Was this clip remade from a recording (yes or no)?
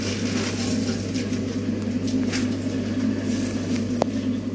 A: no